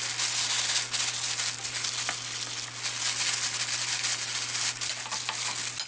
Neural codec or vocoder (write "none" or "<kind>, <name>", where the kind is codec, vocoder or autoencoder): none